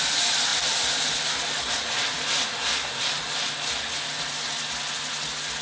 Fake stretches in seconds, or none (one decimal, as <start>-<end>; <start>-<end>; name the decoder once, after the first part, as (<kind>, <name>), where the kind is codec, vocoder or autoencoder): none